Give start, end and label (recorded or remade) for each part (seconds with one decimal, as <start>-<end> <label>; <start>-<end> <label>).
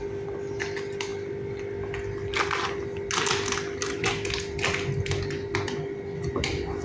0.0-6.8 recorded